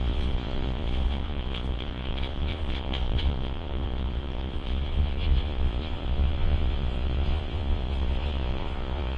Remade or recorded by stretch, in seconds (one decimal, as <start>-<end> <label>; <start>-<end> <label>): 0.0-9.2 remade